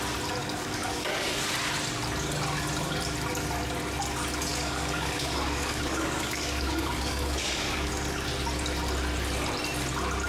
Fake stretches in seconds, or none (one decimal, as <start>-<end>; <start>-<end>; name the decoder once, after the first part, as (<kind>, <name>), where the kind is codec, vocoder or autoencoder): 0.4-1.4 (codec, DAC); 4.5-7.9